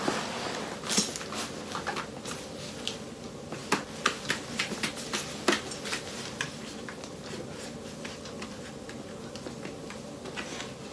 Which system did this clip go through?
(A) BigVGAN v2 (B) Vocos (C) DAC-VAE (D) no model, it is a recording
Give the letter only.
D